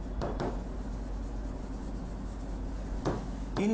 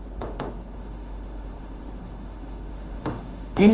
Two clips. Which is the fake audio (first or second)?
second